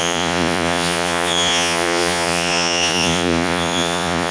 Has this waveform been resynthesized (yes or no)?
yes